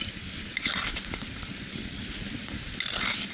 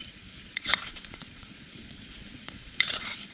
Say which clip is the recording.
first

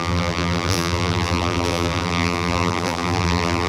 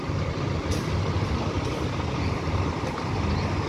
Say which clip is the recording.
second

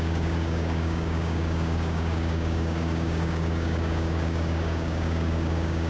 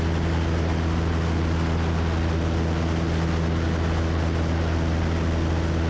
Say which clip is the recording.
second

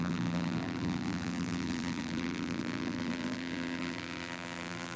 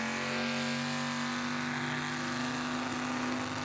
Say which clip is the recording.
second